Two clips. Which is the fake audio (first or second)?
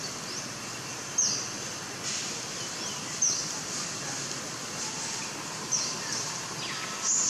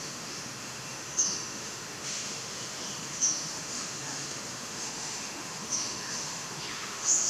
second